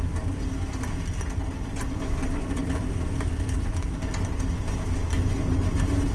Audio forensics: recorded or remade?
recorded